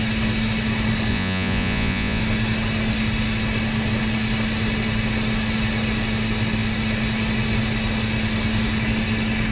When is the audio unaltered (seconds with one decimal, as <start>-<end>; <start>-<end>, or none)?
0.0-1.1; 2.2-9.5

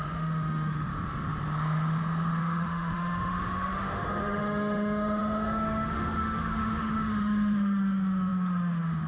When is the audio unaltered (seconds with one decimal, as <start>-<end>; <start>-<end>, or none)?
0.9-2.4

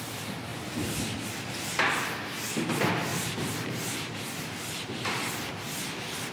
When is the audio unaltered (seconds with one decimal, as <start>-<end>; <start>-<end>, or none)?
0.0-3.1; 4.6-6.3

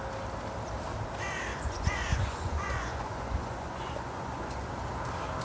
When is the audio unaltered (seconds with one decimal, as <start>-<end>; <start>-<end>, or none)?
0.0-1.5; 4.7-5.4

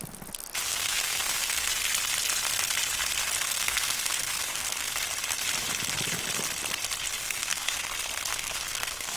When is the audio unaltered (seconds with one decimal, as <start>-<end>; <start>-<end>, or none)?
0.0-0.7; 1.7-3.4; 5.0-7.2; 7.8-8.3

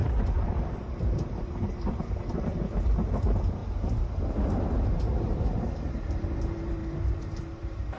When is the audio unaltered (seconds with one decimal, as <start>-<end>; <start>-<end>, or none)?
3.6-5.0